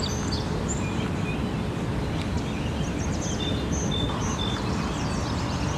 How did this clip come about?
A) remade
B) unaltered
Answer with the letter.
B